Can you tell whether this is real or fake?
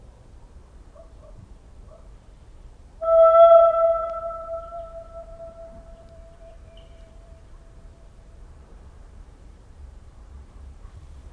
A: fake